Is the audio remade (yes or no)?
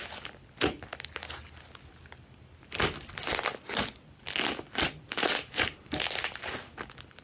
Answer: no